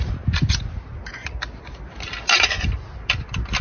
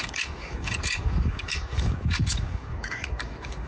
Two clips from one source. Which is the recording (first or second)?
first